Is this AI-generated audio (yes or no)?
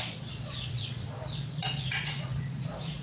yes